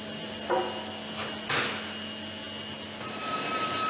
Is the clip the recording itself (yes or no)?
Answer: yes